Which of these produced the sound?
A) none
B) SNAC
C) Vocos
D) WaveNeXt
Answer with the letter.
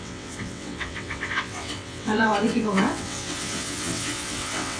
D